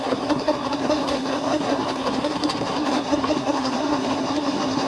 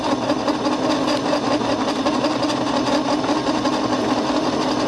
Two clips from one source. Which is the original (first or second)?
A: second